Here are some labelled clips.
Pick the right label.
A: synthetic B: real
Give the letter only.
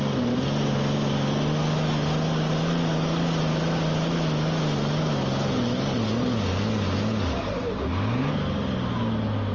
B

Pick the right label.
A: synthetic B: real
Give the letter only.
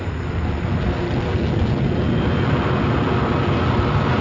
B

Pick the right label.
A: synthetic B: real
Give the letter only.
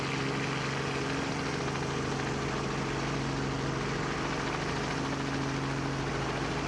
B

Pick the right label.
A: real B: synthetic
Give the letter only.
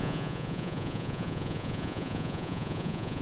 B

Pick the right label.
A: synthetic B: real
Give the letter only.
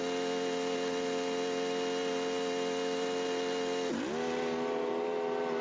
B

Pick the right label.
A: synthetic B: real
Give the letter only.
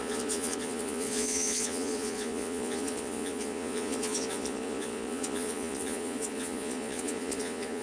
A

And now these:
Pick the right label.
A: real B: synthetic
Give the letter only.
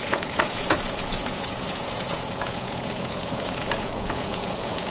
B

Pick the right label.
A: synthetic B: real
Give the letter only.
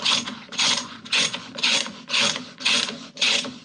A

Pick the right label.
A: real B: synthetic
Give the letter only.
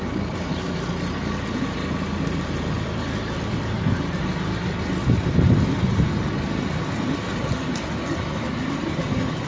A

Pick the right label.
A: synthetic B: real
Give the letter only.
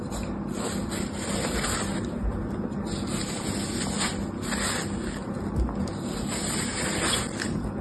B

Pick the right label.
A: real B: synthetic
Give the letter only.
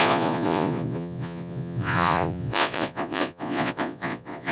B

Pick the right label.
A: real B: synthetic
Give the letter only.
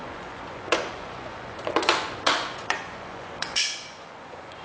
B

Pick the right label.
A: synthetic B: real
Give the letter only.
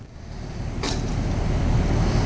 B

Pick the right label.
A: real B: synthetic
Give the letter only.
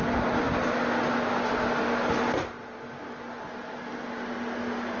A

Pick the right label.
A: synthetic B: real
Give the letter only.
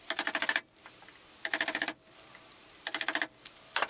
B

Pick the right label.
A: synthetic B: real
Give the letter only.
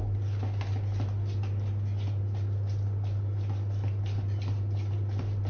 B